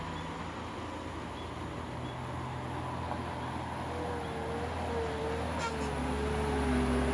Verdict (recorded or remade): recorded